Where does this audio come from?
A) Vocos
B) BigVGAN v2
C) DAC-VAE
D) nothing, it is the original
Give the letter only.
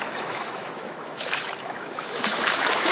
C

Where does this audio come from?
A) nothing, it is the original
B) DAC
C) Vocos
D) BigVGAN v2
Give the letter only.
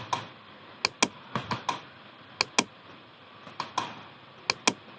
A